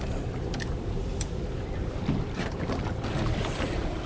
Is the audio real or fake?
real